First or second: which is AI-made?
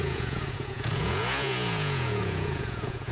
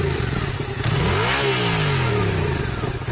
first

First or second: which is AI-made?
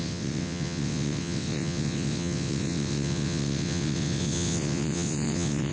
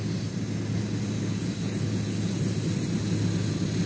first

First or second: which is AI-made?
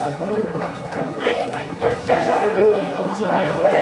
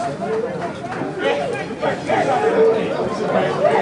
first